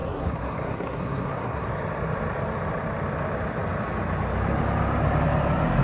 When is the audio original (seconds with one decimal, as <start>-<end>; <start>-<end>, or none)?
1.7-5.8